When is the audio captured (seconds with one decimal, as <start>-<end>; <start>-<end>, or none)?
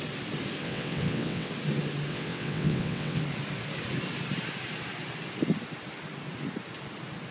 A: 0.0-0.6; 1.5-2.1; 3.2-7.3